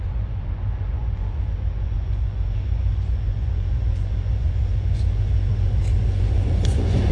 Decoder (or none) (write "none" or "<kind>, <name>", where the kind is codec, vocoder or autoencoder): vocoder, Vocos